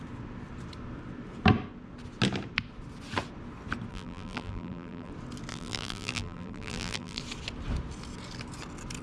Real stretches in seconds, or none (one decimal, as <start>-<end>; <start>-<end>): 0.0-3.9; 5.1-5.5; 7.2-9.0